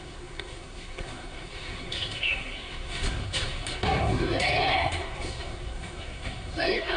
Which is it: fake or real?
fake